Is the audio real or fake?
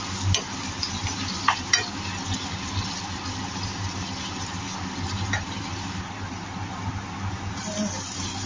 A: real